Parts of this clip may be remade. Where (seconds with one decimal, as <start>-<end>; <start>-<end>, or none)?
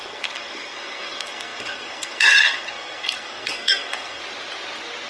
0.0-4.2